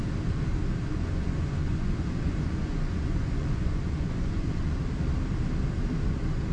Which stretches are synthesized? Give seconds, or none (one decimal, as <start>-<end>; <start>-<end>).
0.9-4.8